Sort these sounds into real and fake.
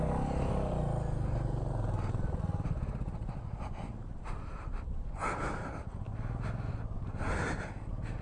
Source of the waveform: real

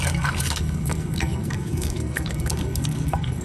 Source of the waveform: fake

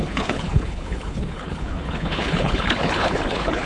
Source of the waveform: fake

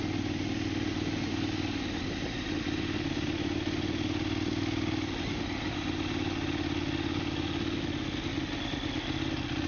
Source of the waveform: real